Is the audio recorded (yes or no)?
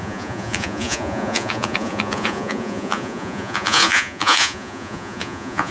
no